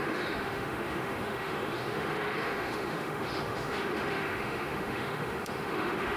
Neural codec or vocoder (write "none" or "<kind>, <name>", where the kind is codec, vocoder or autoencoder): autoencoder, DAC-VAE